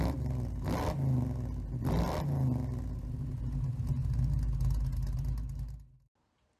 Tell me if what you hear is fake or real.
real